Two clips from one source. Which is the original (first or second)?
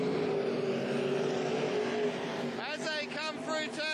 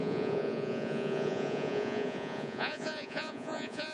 first